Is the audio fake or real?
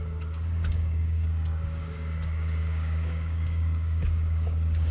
fake